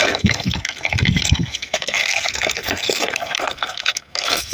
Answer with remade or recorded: remade